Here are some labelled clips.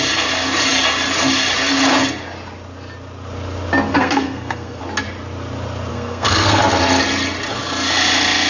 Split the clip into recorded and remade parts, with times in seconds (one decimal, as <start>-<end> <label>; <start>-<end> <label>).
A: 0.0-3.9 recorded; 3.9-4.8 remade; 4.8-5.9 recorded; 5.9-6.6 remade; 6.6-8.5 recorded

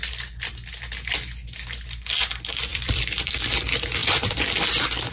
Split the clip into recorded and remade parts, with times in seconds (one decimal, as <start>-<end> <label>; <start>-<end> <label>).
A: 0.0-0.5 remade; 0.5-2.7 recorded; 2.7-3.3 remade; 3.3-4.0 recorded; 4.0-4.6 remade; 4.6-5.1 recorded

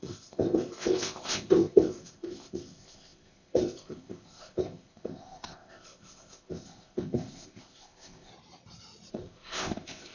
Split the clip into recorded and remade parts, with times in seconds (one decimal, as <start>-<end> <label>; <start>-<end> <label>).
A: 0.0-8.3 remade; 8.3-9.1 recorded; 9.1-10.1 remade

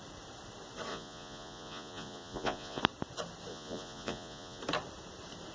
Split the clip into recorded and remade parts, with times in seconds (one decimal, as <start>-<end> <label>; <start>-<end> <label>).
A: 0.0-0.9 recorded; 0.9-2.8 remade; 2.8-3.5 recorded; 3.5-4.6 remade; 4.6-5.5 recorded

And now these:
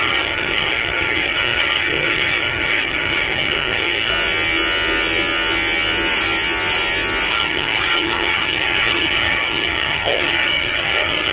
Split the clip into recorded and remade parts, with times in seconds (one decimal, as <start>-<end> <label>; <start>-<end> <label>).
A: 0.0-4.1 remade; 4.1-7.3 recorded; 7.3-11.3 remade

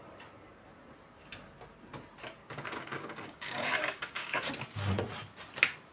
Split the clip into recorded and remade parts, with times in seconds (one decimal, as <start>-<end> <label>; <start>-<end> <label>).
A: 0.0-2.4 recorded; 2.4-4.5 remade; 4.5-5.9 recorded

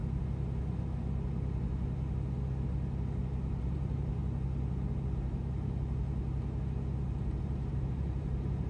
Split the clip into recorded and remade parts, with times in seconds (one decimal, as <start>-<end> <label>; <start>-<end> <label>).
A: 0.0-3.6 recorded; 3.6-4.2 remade; 4.2-7.4 recorded; 7.4-8.7 remade